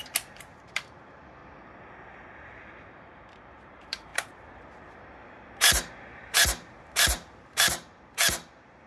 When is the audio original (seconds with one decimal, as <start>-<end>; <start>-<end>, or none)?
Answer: 1.4-2.5